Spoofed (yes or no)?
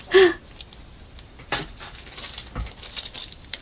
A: no